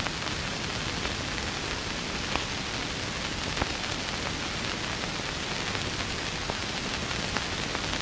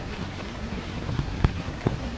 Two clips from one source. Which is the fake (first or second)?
second